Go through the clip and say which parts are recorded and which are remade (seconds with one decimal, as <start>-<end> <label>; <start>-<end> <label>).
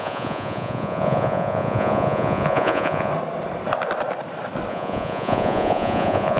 0.0-3.1 remade; 3.1-4.7 recorded; 4.7-6.4 remade